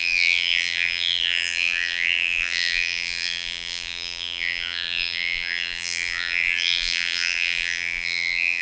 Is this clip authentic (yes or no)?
no